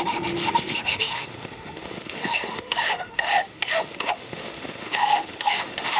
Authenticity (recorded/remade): remade